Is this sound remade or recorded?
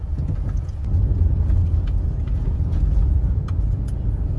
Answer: remade